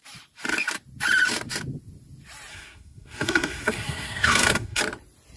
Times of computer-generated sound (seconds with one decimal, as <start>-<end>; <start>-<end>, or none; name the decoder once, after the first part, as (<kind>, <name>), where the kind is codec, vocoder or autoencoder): 2.5-4.8 (codec, SNAC)